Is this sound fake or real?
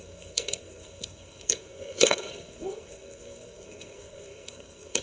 fake